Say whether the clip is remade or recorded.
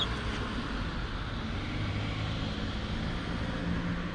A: recorded